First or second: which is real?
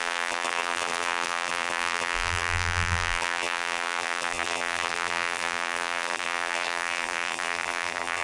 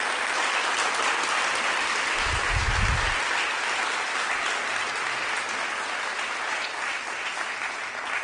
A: second